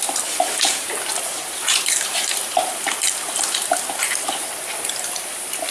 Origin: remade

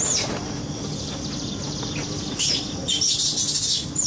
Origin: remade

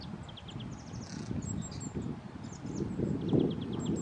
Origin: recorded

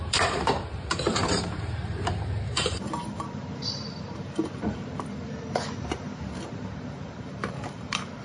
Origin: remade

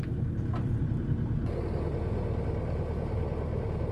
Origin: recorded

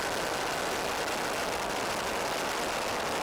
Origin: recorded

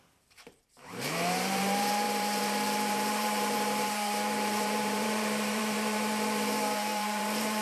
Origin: remade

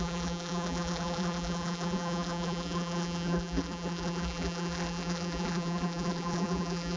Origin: remade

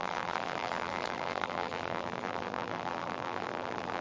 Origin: remade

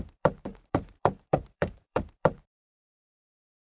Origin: remade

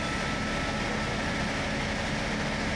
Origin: recorded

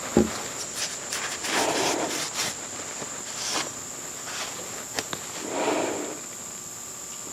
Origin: recorded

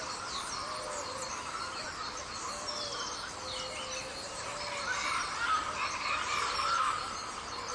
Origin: remade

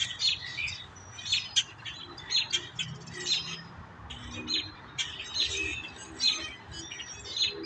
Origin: remade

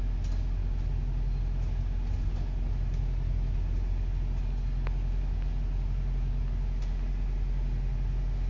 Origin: recorded